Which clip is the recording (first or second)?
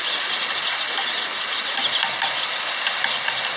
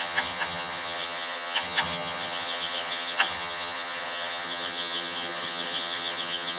first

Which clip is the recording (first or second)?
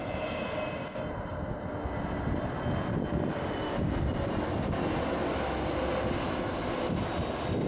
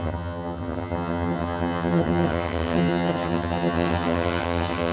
first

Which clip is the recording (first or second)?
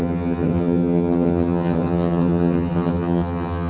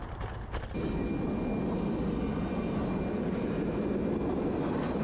second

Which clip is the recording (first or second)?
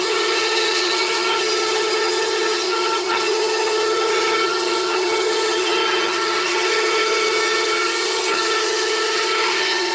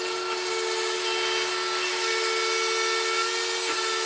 second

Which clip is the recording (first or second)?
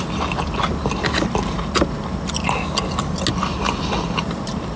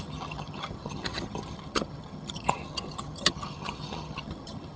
first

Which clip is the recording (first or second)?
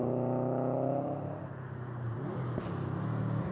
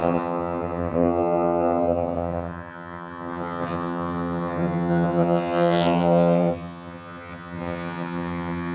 first